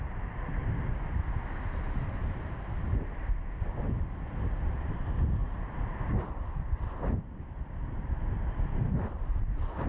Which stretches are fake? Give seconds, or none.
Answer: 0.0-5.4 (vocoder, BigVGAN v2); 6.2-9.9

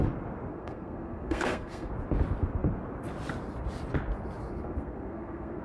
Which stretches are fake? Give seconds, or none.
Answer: 0.5-1.9 (codec, SNAC); 4.5-5.6

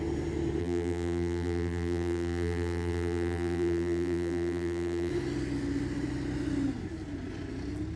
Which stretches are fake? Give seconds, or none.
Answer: 0.6-5.1 (vocoder, BigVGAN v2)

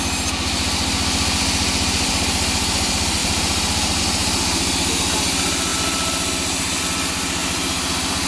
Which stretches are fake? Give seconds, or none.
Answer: 3.2-4.0 (vocoder, BigVGAN v2); 7.4-8.3

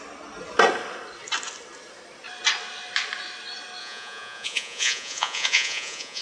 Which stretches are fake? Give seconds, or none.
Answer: 3.8-6.2 (vocoder, Vocos)